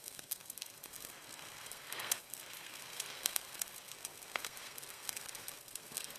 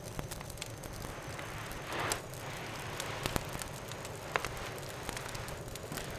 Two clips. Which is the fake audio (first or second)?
first